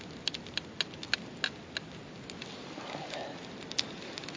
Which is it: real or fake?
real